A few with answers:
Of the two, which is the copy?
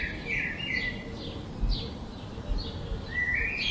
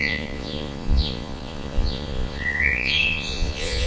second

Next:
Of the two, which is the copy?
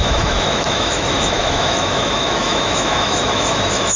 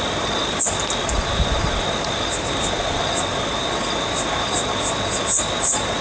first